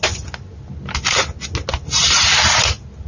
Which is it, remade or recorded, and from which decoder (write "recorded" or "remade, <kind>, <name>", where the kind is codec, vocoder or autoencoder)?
recorded